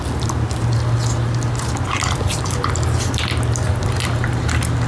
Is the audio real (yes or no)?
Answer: yes